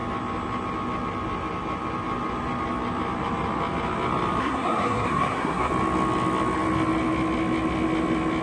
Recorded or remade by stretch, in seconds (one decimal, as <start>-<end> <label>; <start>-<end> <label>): 0.0-4.4 recorded; 4.4-5.7 remade; 5.7-8.4 recorded